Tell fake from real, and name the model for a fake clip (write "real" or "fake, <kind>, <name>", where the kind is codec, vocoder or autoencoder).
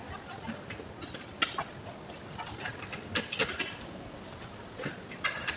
real